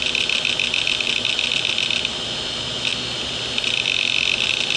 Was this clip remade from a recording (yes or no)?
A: no